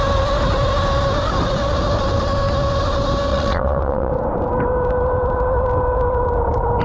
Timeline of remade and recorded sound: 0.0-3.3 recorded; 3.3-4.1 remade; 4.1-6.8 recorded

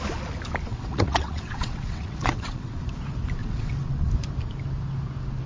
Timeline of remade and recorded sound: 0.0-0.7 recorded; 0.7-2.8 remade; 2.8-3.4 recorded; 3.4-4.1 remade; 4.1-5.5 recorded

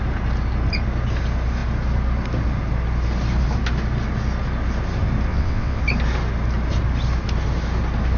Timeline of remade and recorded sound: 0.0-5.3 recorded; 5.3-5.8 remade; 5.8-8.2 recorded

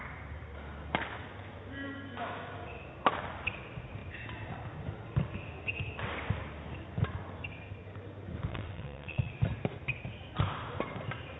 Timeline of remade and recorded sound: 0.0-8.5 recorded; 8.5-9.3 remade; 9.3-11.4 recorded